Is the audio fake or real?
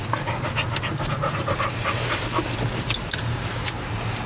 real